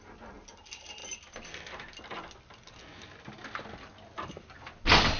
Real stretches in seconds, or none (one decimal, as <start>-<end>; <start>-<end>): 0.0-5.2

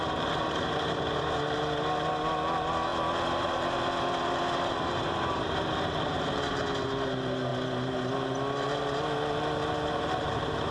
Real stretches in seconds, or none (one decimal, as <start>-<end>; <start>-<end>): 0.0-2.9; 5.1-10.7

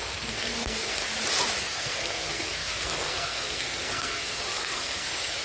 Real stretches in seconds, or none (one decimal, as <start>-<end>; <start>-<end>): 1.0-1.6

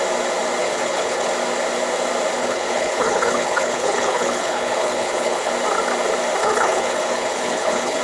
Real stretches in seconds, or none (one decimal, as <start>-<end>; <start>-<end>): 0.0-0.6; 1.3-2.4; 5.5-6.4

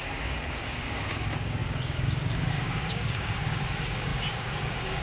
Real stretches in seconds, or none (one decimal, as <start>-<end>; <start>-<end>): none